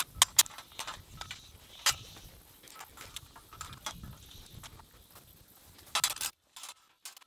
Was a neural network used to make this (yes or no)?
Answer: no